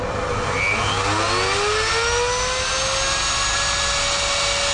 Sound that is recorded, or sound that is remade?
recorded